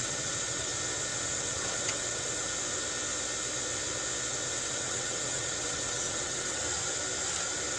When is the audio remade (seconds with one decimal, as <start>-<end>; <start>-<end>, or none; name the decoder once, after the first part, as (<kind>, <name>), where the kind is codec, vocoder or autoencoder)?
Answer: 0.0-0.7 (vocoder, WaveNeXt); 1.1-2.5; 4.5-6.6